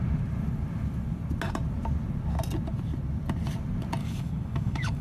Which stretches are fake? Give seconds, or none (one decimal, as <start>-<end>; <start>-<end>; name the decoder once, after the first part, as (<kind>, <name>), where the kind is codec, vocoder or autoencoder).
4.0-5.0 (codec, DAC)